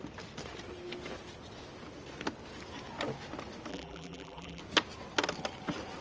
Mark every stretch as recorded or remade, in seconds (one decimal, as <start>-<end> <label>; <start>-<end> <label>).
0.0-3.7 recorded; 3.7-4.6 remade; 4.6-6.0 recorded

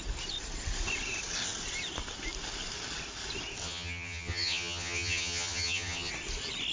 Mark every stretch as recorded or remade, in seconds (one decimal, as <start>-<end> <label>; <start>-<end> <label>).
0.0-3.6 recorded; 3.6-6.1 remade; 6.1-6.7 recorded

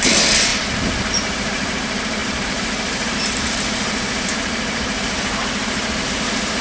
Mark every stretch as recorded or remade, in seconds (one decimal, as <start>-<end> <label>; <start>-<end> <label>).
0.0-0.5 remade; 0.5-1.1 recorded; 1.1-6.6 remade

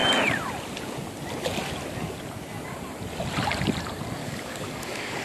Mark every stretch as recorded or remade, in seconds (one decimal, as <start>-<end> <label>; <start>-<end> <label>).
0.0-4.2 recorded; 4.2-5.2 remade

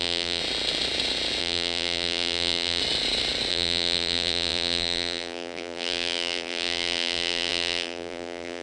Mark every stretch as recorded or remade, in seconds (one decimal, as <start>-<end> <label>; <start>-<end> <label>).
0.0-0.4 remade; 0.4-1.4 recorded; 1.4-2.8 remade; 2.8-3.5 recorded; 3.5-8.6 remade

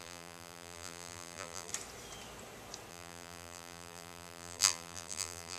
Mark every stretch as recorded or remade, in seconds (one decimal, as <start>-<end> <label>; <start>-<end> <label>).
0.0-1.7 remade; 1.7-2.9 recorded; 2.9-5.6 remade

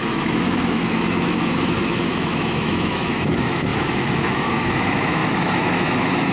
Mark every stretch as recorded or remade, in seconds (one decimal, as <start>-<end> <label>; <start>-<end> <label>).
0.0-6.3 remade

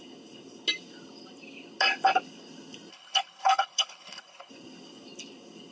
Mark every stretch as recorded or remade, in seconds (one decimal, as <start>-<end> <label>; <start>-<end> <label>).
0.0-2.9 recorded; 2.9-4.5 remade; 4.5-5.7 recorded